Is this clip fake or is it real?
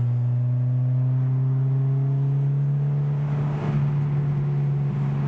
real